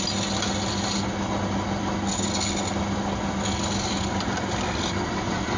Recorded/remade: recorded